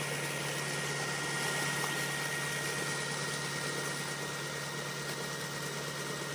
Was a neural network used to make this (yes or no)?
no